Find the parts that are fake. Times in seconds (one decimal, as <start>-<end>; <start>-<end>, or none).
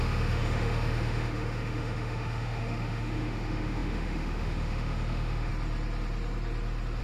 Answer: 0.0-5.5